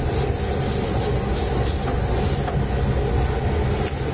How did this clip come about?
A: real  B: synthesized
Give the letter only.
A